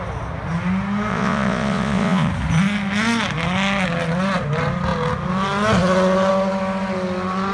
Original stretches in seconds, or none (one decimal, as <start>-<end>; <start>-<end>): 0.0-1.1; 2.3-7.5